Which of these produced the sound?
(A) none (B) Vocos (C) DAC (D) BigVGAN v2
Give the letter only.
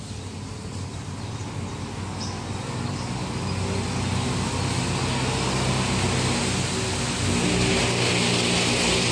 A